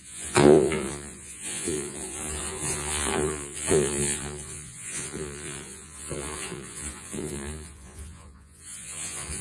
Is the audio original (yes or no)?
no